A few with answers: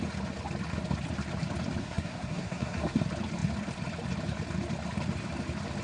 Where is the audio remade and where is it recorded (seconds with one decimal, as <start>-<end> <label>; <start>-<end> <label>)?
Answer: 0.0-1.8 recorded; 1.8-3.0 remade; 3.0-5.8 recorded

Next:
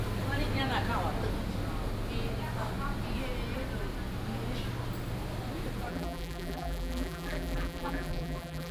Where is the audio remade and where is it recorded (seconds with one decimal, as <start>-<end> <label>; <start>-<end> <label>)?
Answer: 0.0-5.9 recorded; 5.9-8.7 remade

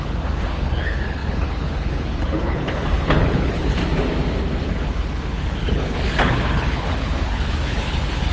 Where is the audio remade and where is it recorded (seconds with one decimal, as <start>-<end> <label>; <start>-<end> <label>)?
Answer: 0.0-3.8 remade; 3.8-4.6 recorded; 4.6-8.3 remade